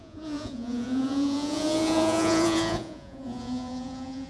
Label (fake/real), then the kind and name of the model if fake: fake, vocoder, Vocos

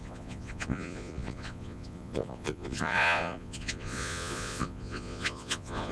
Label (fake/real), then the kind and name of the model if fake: fake, vocoder, Vocos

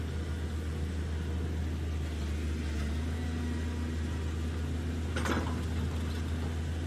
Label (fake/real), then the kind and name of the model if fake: real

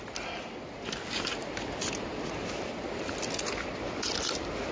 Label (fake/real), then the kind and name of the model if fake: real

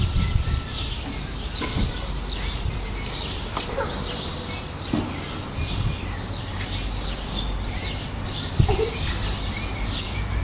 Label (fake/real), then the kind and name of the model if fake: real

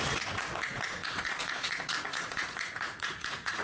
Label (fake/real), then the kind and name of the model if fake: fake, vocoder, Vocos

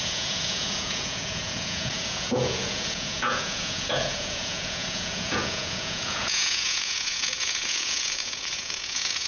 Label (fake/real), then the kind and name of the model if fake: fake, vocoder, Vocos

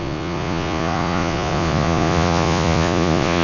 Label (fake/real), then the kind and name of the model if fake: fake, vocoder, Vocos